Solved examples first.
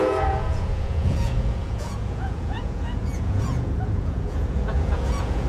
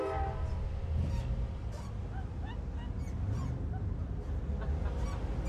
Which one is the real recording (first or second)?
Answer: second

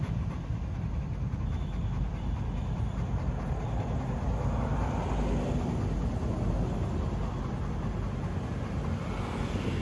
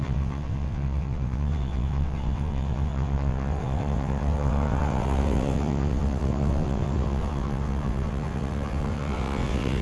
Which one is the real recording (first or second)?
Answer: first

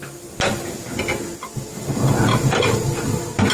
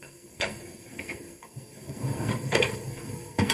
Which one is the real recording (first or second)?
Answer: first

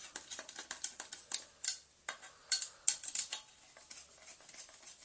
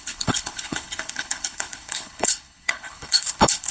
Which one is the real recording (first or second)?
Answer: first